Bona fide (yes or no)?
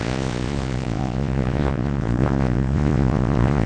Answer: no